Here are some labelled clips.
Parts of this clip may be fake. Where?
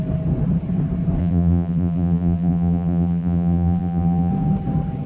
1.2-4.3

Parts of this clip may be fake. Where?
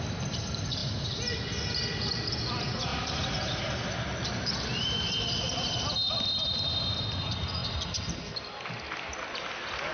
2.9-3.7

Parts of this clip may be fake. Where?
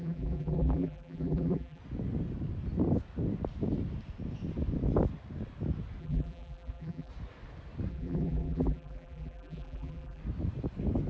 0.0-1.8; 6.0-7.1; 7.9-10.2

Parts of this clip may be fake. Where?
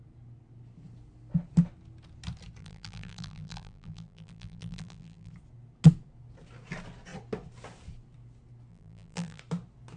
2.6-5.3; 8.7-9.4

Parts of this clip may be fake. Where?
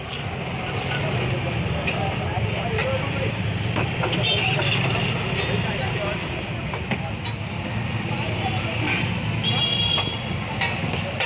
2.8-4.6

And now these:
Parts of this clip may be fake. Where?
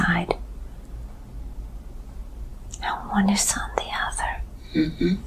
2.5-5.3